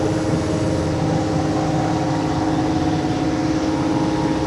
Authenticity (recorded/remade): recorded